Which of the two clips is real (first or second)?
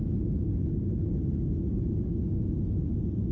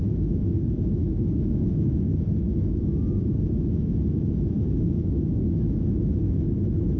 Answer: first